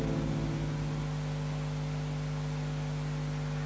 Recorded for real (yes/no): yes